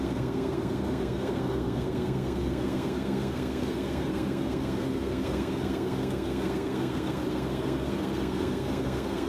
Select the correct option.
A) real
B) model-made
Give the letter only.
B